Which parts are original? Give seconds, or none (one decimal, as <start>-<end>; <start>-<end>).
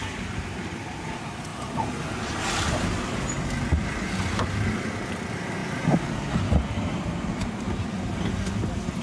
0.0-9.0